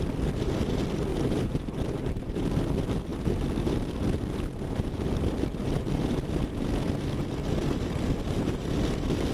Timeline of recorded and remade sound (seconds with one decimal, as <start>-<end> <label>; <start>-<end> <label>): 0.0-1.1 recorded; 1.1-2.4 remade; 2.4-9.3 recorded